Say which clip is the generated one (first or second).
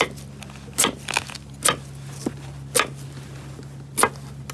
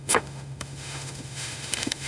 second